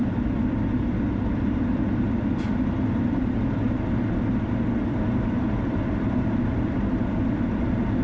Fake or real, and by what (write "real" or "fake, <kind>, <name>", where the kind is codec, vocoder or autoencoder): fake, vocoder, BigVGAN v2